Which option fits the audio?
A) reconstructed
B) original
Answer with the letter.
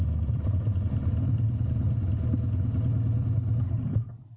B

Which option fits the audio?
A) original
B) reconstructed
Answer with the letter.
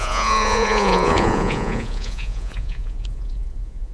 B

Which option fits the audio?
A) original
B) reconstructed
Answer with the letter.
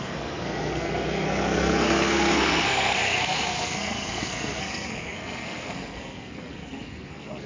B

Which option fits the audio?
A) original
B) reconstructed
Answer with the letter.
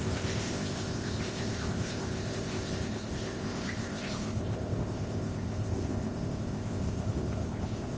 B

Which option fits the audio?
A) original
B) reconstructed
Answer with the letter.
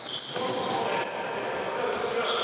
A